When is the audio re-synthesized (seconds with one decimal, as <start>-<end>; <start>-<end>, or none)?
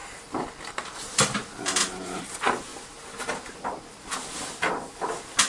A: none